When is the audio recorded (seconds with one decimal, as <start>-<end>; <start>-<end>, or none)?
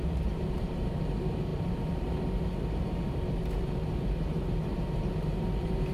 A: none